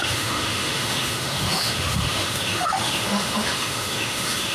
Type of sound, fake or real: fake